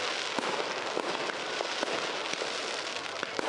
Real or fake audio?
real